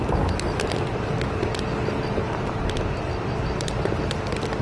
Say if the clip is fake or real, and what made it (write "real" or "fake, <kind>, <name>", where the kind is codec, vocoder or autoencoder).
real